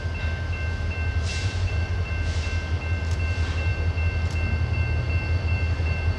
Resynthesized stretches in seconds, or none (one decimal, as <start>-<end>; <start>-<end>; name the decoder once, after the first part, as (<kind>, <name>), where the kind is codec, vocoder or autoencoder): 1.4-2.1 (vocoder, Vocos)